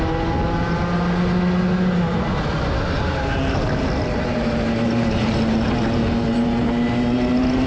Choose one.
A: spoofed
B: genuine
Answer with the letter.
B